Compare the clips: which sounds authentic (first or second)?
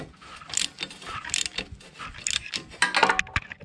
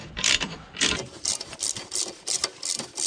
first